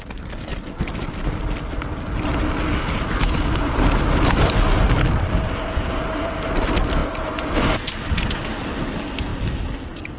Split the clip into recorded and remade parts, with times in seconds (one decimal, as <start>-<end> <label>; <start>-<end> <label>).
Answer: 0.0-10.2 recorded